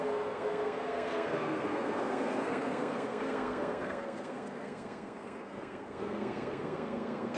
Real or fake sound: fake